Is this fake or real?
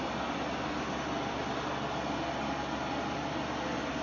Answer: real